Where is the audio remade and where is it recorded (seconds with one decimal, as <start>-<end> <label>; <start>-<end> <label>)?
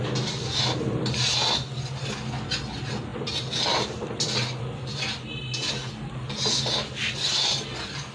0.0-8.1 recorded